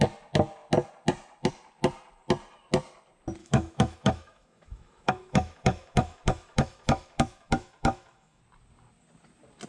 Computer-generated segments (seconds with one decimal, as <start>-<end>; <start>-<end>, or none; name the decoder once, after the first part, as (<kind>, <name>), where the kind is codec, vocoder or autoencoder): 3.4-8.4 (autoencoder, DAC-VAE)